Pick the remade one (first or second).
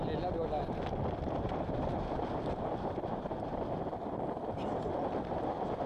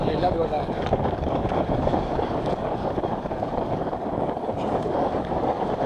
second